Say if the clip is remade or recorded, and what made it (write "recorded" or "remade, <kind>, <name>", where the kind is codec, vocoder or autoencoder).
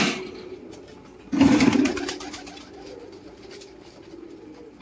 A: remade, vocoder, BigVGAN v2